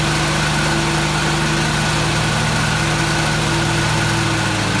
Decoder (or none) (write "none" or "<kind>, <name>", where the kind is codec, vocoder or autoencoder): none